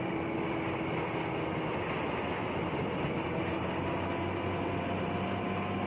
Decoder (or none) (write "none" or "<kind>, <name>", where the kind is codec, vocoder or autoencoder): none